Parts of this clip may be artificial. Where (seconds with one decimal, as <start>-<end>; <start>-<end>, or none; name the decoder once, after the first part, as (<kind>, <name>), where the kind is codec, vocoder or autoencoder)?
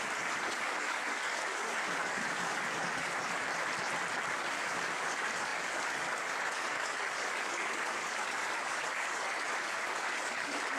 0.0-3.5 (codec, DAC); 4.3-10.8